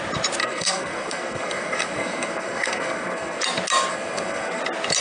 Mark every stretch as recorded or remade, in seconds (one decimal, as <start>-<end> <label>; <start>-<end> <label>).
0.0-0.4 recorded; 0.4-3.4 remade; 3.4-3.9 recorded; 3.9-4.6 remade; 4.6-5.0 recorded